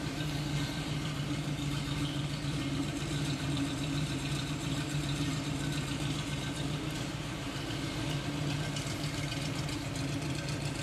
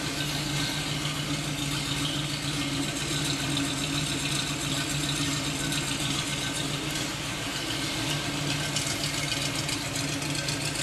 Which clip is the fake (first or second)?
first